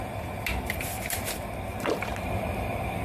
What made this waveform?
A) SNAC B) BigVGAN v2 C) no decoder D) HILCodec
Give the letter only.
B